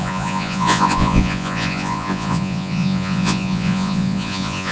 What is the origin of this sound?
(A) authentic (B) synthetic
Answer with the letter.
B